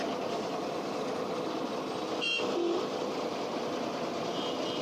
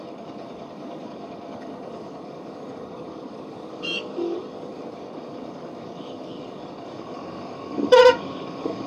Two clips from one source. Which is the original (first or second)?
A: first